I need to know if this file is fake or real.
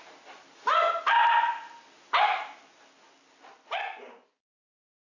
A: real